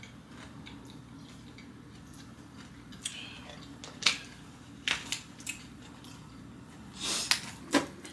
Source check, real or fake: real